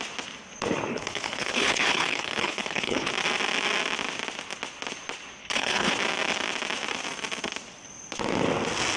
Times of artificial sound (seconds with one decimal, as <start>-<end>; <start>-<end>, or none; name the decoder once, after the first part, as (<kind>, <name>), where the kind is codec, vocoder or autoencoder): 0.9-3.1 (codec, HILCodec); 5.4-5.9